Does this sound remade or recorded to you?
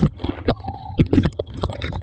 remade